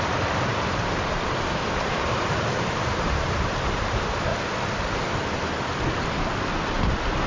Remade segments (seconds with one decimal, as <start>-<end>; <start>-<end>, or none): 0.0-4.3